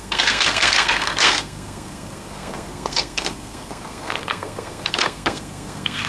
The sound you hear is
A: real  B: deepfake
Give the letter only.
B